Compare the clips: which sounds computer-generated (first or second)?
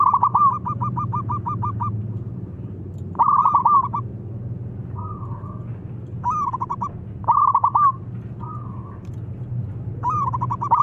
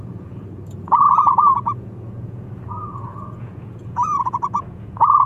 second